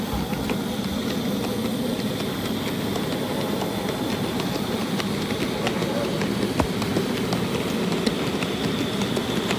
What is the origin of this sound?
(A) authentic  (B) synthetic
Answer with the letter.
A